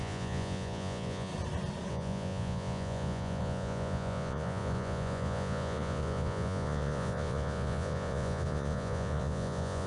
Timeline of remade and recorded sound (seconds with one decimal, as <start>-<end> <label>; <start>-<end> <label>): 0.0-1.3 remade; 1.3-1.9 recorded; 1.9-9.9 remade